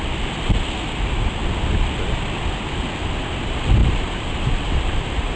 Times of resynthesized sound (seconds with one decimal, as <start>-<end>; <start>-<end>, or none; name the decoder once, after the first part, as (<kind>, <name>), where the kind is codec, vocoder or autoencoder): 3.8-5.4 (vocoder, BigVGAN v2)